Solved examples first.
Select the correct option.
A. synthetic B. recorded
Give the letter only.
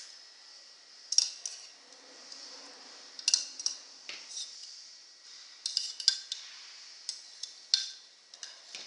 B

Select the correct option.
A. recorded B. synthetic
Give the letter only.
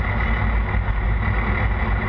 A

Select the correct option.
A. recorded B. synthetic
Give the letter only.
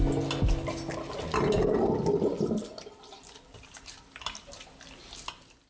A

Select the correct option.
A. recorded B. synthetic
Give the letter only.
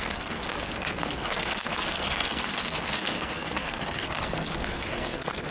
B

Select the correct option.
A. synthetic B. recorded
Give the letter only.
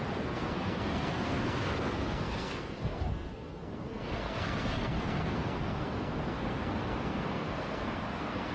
A